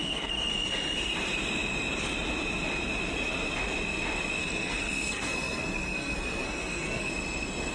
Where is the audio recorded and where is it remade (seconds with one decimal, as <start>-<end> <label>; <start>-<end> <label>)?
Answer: 0.0-0.5 remade; 0.5-4.4 recorded; 4.4-7.1 remade; 7.1-7.7 recorded